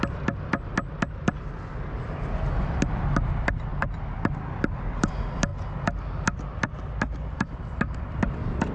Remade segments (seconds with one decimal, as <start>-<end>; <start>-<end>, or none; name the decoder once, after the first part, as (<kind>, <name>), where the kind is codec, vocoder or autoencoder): 2.6-5.5 (vocoder, BigVGAN v2); 7.5-8.7